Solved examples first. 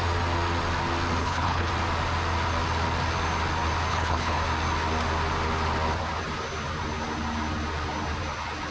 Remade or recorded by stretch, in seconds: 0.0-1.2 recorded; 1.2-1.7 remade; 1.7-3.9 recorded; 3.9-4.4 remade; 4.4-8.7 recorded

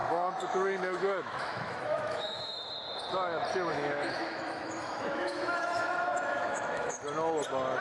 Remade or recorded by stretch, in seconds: 0.0-2.6 remade; 2.6-3.7 recorded; 3.7-7.0 remade; 7.0-7.8 recorded

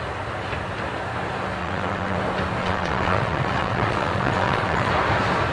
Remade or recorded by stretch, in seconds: 0.0-1.6 recorded; 1.6-2.2 remade; 2.2-2.6 recorded; 2.6-4.9 remade; 4.9-5.5 recorded

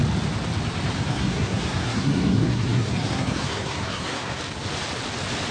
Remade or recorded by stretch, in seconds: 0.0-1.1 recorded; 1.1-4.4 remade; 4.4-5.5 recorded

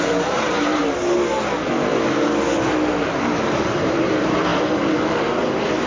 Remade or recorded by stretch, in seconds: 0.0-0.8 remade; 0.8-3.4 recorded; 3.4-4.5 remade; 4.5-5.9 recorded

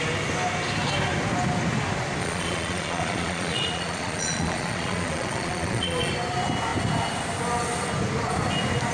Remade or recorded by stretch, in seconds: 0.0-2.2 recorded; 2.2-6.1 remade; 6.1-8.9 recorded